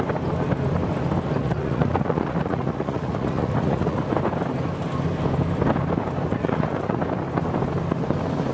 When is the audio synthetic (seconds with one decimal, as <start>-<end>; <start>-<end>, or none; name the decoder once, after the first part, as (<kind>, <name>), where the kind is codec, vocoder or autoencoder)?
1.4-4.0 (vocoder, Vocos); 6.3-7.0